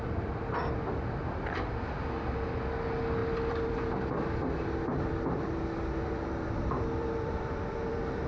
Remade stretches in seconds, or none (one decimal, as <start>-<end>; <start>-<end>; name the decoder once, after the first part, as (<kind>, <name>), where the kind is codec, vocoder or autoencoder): 3.2-8.3 (vocoder, BigVGAN v2)